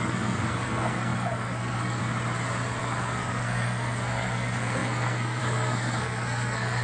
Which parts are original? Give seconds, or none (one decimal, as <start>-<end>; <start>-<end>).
2.0-2.8